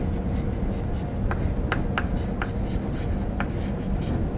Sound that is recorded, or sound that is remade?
recorded